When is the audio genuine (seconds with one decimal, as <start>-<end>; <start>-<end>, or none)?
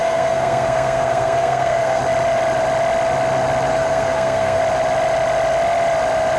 2.0-3.7; 4.6-6.4